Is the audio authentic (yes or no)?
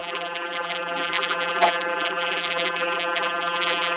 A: no